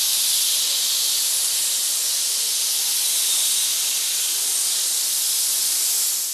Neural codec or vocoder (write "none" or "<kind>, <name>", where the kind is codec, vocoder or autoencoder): none